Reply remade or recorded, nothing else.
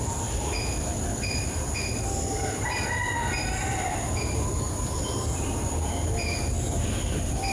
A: remade